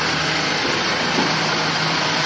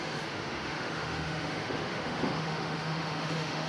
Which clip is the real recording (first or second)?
first